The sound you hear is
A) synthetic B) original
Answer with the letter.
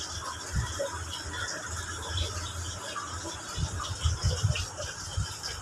B